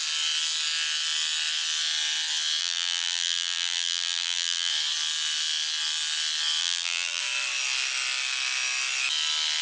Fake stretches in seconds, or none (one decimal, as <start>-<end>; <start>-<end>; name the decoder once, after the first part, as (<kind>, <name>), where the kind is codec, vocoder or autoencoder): 2.6-4.7 (vocoder, BigVGAN v2); 6.6-7.2